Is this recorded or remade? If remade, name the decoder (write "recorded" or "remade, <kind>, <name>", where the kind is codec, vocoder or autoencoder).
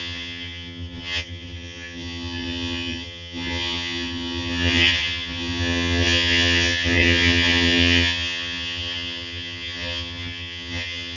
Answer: remade, vocoder, HiFi-GAN